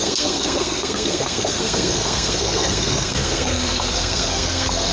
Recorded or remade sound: remade